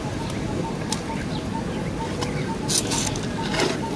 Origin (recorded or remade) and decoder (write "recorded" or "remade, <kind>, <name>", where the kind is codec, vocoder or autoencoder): recorded